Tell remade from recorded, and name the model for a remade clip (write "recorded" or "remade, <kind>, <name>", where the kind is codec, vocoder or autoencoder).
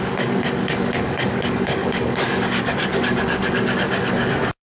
remade, codec, DAC